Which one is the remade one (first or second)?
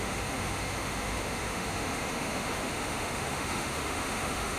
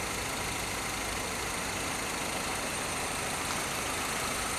first